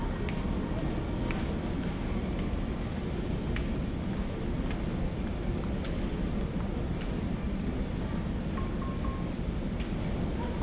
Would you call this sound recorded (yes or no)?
yes